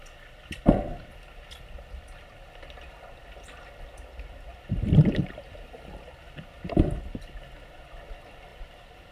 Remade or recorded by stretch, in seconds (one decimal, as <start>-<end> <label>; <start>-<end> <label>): 0.0-9.1 recorded